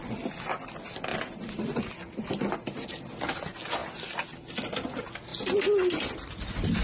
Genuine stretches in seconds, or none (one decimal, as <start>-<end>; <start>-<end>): 0.0-6.8